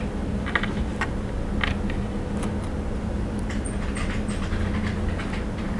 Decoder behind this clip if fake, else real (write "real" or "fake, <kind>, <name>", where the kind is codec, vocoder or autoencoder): real